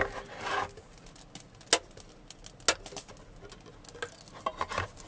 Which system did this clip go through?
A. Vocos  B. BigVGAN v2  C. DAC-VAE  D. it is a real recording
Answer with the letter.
D